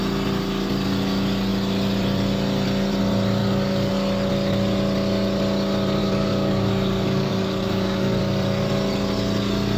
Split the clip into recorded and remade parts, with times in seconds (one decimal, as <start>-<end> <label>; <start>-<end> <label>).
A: 0.0-3.4 recorded; 3.4-3.9 remade; 3.9-6.0 recorded; 6.0-8.2 remade; 8.2-9.8 recorded